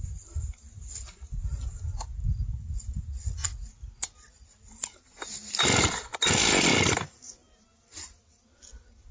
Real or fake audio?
real